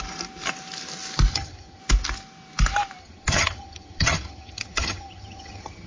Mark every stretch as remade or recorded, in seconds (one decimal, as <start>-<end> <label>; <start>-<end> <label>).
0.0-1.3 recorded; 1.3-1.8 remade; 1.8-3.0 recorded; 3.0-5.9 remade